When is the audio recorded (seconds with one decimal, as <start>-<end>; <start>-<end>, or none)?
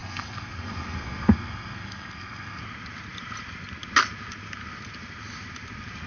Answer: 2.6-6.1